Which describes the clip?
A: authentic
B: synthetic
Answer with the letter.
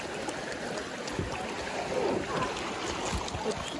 A